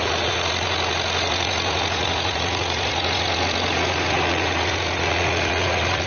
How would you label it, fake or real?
fake